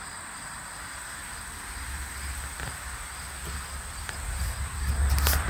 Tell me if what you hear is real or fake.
real